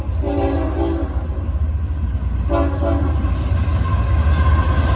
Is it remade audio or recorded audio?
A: recorded